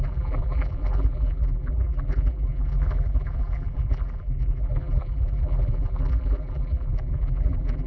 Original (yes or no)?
no